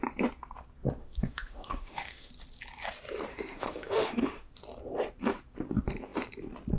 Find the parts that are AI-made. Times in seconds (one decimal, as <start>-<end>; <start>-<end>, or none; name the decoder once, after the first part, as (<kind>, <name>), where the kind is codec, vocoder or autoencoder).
1.0-2.3 (autoencoder, DAC-VAE); 3.3-4.5